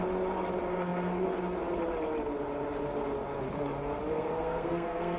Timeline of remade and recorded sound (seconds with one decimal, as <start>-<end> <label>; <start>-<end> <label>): 0.0-4.1 recorded; 4.1-5.2 remade